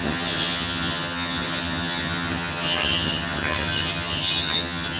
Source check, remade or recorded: remade